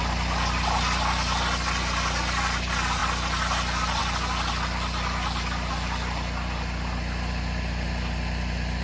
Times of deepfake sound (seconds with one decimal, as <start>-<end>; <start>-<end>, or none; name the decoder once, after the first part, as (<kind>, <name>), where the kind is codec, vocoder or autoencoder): none